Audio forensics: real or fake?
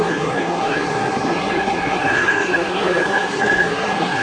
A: fake